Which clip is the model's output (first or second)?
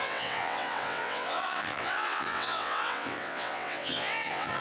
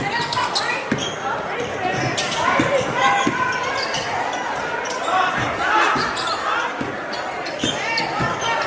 first